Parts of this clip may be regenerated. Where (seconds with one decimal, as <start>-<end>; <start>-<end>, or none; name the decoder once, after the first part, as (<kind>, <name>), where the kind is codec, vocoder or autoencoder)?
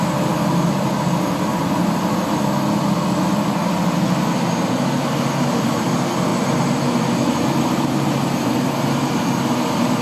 none